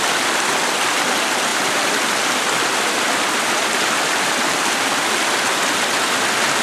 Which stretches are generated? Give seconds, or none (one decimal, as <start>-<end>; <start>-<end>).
none